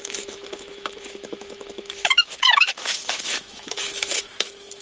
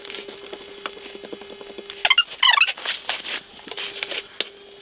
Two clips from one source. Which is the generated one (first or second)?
first